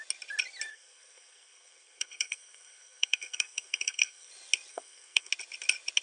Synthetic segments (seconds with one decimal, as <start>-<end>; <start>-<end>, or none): 0.7-4.3; 4.7-5.3